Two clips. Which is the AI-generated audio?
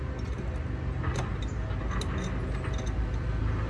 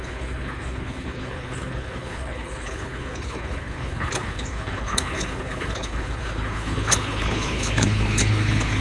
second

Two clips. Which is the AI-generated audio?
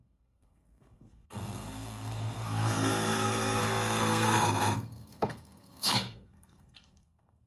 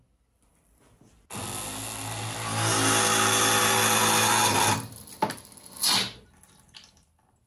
first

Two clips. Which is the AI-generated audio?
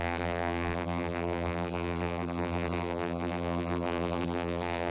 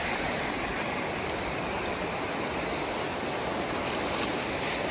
first